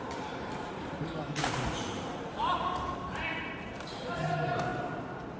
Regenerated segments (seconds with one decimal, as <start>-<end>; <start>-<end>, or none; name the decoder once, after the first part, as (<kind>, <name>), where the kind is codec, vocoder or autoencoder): 0.0-4.7 (vocoder, BigVGAN v2)